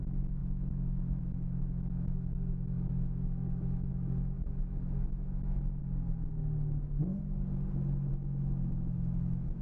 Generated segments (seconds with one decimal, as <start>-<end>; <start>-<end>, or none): 0.0-5.8; 8.1-9.6